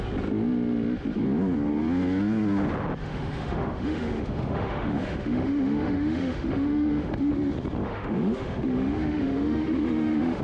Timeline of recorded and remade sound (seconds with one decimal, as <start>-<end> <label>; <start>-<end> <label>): 0.0-3.0 recorded; 3.0-7.3 remade; 7.3-7.8 recorded; 7.8-10.4 remade